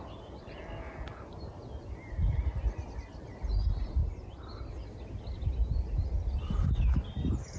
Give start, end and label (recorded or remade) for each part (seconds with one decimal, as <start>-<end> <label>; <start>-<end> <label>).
0.0-7.6 recorded